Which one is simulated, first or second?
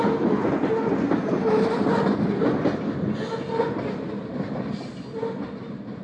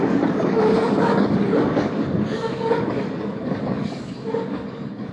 second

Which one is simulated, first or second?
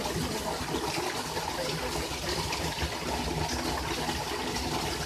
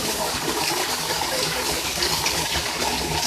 second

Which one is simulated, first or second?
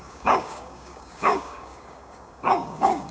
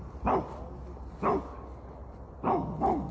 first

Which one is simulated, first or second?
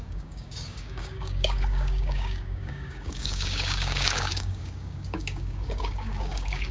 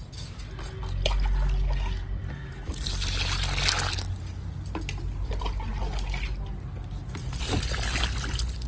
first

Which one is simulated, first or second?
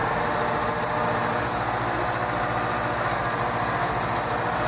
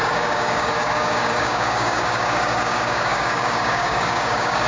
second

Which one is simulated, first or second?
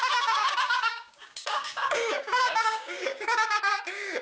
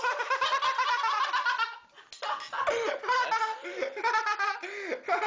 first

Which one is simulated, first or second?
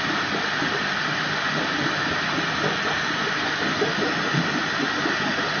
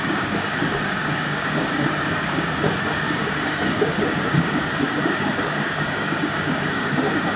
second